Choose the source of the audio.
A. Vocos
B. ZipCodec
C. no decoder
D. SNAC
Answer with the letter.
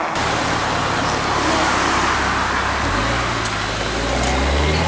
C